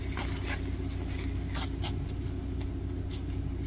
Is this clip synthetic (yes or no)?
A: no